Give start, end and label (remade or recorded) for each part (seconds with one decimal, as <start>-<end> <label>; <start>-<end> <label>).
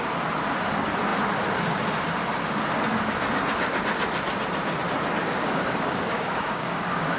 0.0-5.2 recorded; 5.2-7.2 remade